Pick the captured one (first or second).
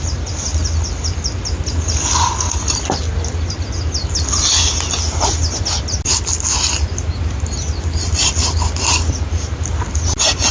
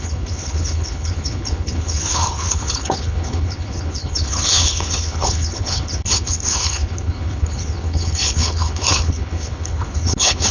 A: first